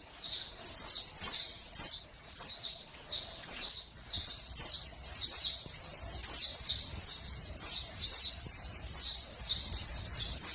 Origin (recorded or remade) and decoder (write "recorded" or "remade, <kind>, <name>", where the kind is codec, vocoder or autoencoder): remade, vocoder, BigVGAN v2